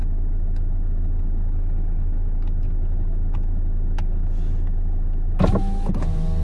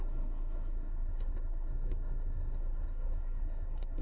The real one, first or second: first